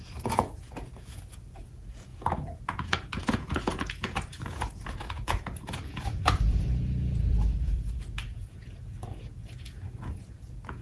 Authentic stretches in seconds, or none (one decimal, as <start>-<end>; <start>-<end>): none